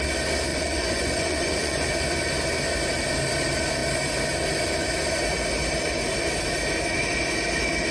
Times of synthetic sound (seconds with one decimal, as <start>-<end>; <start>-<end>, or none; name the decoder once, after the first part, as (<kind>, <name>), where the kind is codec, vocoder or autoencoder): 0.5-1.9 (vocoder, Vocos)